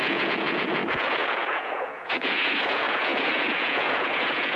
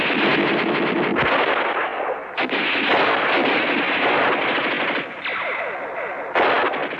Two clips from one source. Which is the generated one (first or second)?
first